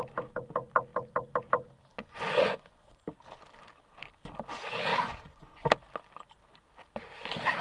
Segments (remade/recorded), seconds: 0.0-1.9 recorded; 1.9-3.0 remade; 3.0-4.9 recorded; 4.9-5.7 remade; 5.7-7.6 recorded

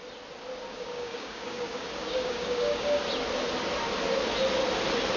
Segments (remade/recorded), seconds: 0.0-0.7 recorded; 0.7-3.0 remade; 3.0-5.2 recorded

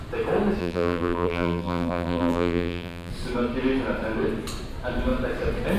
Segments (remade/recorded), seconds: 0.0-0.6 recorded; 0.6-3.1 remade; 3.1-5.8 recorded

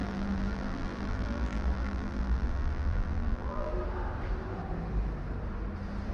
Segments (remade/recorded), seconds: 0.0-3.7 remade; 3.7-6.1 recorded

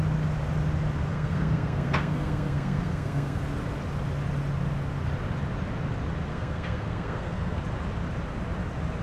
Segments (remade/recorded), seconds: 0.0-1.1 recorded; 1.1-3.4 remade; 3.4-6.3 recorded; 6.3-7.6 remade; 7.6-9.0 recorded

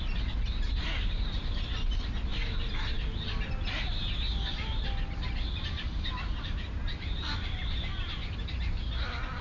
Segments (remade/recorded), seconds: 0.0-9.4 recorded

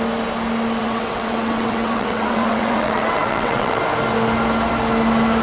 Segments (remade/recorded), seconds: 0.0-0.8 recorded; 0.8-3.8 remade; 3.8-5.4 recorded